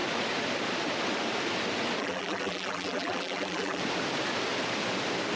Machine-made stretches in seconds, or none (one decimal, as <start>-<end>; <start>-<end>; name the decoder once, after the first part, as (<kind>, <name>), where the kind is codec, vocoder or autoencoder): 2.0-3.8 (vocoder, BigVGAN v2)